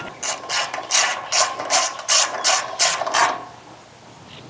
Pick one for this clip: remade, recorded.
recorded